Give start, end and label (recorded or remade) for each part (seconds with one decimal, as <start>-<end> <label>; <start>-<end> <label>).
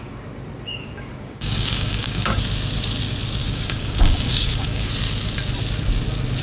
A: 0.0-0.7 recorded; 0.7-2.4 remade; 2.4-3.4 recorded; 3.4-4.9 remade; 4.9-6.4 recorded